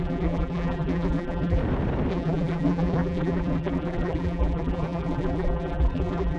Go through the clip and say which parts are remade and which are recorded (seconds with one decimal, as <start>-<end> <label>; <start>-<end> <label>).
0.0-1.6 remade; 1.6-2.1 recorded; 2.1-6.4 remade